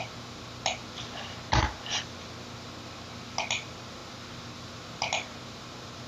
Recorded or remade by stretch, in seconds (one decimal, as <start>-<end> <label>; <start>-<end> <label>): 0.0-6.1 recorded